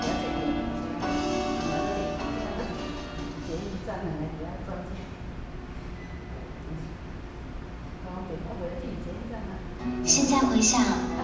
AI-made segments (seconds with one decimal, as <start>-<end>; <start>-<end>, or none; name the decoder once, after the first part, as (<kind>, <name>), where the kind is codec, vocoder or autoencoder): none